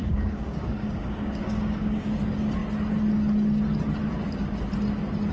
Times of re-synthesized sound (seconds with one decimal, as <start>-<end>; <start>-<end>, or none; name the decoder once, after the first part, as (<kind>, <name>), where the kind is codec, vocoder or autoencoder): 0.0-2.0 (codec, DAC)